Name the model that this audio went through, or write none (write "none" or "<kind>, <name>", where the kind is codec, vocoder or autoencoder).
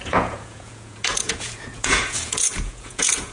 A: vocoder, Vocos